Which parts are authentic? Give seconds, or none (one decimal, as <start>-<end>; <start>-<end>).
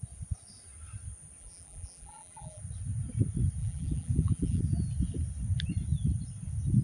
0.0-1.4; 2.6-3.6; 4.6-6.8